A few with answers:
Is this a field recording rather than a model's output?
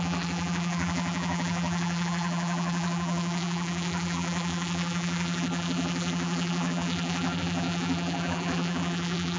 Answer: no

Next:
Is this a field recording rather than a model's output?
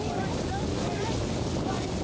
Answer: yes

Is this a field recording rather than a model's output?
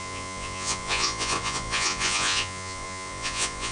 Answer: no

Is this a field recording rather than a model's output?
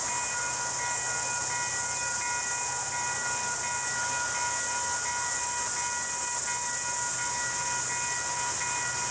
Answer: yes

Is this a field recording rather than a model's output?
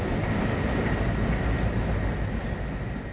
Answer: yes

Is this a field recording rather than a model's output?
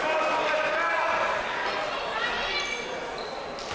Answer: yes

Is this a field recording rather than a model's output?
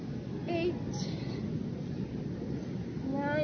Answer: yes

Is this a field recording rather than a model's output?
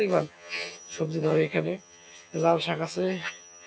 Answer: no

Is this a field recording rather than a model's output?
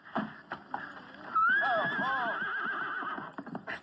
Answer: yes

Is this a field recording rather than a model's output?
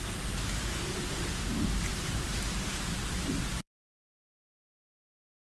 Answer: no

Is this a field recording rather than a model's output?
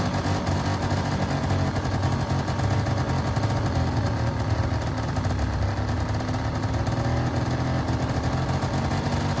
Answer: yes